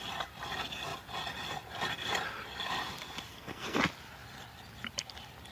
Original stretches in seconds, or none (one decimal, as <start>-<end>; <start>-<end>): 0.0-3.3; 3.8-5.5